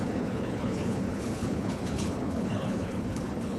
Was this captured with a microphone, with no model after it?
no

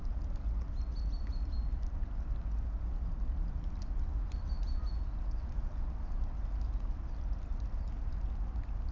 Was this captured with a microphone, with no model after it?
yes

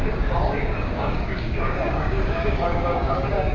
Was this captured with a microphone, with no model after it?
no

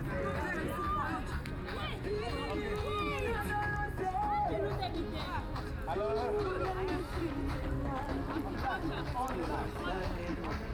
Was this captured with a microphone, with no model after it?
yes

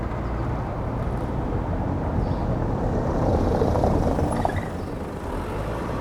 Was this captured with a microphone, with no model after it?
yes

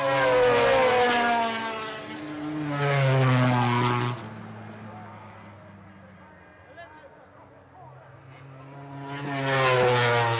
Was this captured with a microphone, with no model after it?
yes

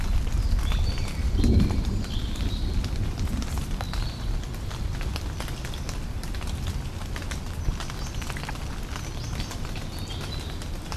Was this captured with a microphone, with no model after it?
yes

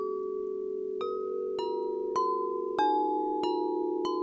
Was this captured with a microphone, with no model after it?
yes